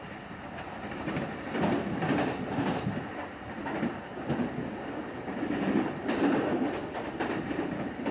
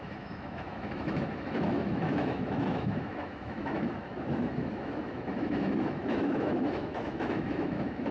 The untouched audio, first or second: first